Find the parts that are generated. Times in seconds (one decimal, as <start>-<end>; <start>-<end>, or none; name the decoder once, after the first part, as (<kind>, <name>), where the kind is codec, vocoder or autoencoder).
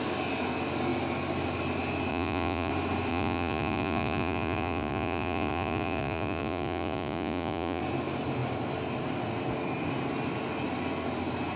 2.1-2.7 (vocoder, Vocos); 3.1-7.8